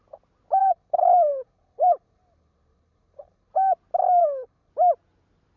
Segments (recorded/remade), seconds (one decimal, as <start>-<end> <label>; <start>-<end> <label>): 0.0-0.6 recorded; 0.6-3.5 remade; 3.5-4.2 recorded; 4.2-4.7 remade; 4.7-5.6 recorded